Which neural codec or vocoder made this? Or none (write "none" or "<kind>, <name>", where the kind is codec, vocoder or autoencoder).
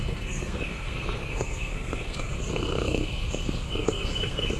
codec, SNAC